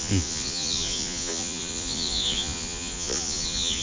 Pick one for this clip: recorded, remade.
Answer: remade